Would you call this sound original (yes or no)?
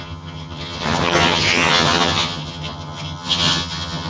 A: no